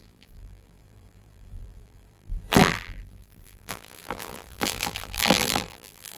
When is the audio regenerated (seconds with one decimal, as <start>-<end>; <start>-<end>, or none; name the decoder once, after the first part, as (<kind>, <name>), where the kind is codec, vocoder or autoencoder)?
0.0-6.2 (vocoder, BigVGAN v2)